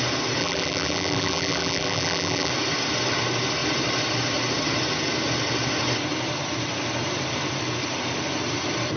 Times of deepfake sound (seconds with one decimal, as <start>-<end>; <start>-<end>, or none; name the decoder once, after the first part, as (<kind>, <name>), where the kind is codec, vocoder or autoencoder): 0.4-2.5 (vocoder, BigVGAN v2)